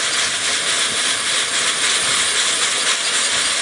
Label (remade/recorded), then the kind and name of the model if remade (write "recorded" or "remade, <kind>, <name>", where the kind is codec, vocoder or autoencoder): recorded